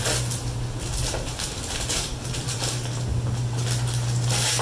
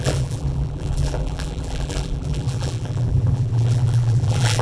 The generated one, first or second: second